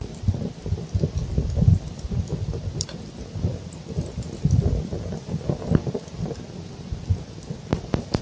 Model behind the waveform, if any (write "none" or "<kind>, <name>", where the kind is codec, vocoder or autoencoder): none